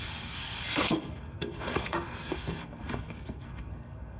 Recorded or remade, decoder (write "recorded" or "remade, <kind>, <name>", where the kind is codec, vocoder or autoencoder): remade, codec, SNAC